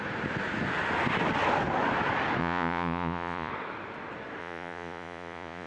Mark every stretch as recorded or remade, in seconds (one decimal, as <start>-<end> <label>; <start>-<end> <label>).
0.0-2.4 recorded; 2.4-3.5 remade; 3.5-4.4 recorded; 4.4-5.7 remade